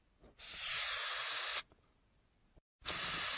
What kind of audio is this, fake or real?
real